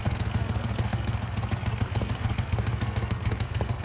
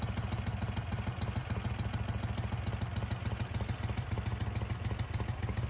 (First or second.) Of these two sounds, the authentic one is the second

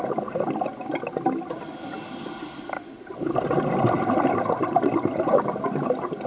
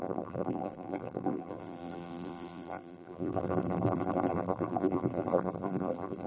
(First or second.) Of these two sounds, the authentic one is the first